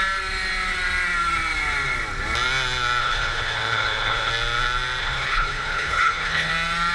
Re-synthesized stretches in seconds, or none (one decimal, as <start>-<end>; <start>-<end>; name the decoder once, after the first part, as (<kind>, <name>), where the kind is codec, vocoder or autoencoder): 3.0-4.3 (codec, HILCodec); 5.0-6.5

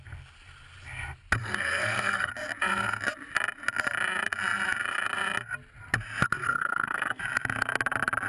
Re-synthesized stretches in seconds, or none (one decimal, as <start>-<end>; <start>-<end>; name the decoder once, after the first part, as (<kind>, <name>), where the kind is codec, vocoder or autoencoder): 1.4-2.3 (codec, SNAC); 6.4-7.2

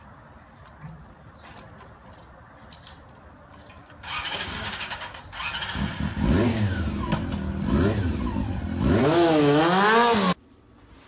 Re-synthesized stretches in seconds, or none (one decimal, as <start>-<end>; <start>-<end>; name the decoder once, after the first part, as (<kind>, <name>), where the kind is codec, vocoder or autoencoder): 3.8-5.2 (codec, DAC); 6.5-7.0; 9.0-9.6

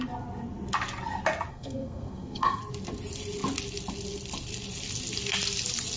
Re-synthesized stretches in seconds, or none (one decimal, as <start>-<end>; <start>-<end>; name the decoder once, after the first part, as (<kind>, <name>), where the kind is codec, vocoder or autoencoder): 1.5-2.6 (codec, SNAC)

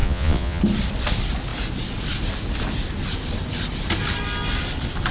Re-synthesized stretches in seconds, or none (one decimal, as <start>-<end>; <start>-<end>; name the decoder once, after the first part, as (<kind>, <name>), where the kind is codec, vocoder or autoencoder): 0.0-0.6 (vocoder, Vocos)

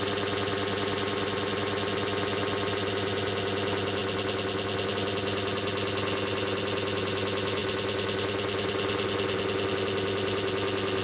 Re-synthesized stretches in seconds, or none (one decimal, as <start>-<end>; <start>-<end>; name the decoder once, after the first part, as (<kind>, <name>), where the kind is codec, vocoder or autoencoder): none